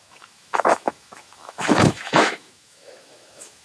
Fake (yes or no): yes